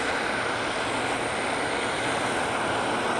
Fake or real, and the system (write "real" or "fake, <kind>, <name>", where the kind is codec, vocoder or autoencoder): real